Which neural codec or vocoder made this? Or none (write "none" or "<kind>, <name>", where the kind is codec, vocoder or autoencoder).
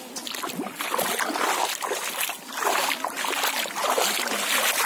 none